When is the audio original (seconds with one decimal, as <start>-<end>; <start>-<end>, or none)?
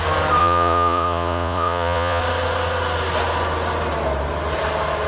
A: 0.0-0.4; 2.2-5.1